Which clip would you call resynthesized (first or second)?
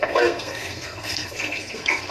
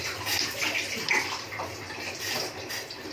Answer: first